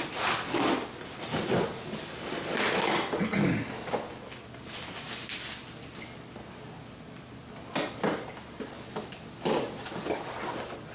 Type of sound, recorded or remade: recorded